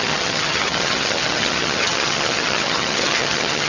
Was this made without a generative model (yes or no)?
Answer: no